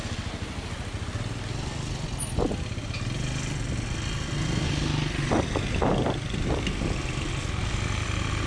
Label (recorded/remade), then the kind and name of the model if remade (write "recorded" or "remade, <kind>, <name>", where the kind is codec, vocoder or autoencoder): recorded